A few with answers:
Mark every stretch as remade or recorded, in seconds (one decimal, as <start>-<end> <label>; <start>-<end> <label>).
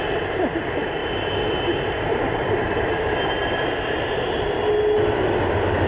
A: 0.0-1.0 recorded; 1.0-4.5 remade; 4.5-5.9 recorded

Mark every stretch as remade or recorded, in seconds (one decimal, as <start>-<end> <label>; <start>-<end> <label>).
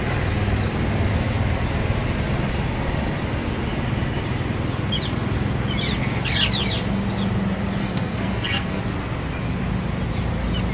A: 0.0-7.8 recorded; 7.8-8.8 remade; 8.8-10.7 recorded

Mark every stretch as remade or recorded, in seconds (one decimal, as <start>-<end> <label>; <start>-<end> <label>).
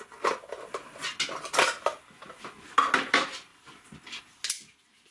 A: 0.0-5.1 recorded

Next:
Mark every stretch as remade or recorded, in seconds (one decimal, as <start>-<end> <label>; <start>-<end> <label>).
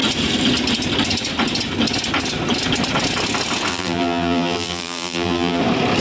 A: 0.0-3.7 recorded; 3.7-5.6 remade; 5.6-6.0 recorded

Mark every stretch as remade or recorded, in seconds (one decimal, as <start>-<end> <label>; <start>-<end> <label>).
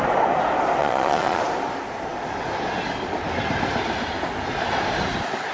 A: 0.0-0.8 recorded; 0.8-1.4 remade; 1.4-5.5 recorded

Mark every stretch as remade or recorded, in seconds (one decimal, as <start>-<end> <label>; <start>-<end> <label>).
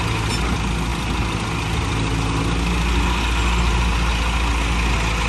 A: 0.0-5.3 recorded